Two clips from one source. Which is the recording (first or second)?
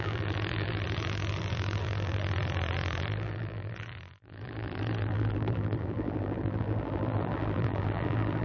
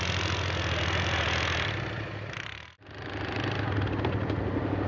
second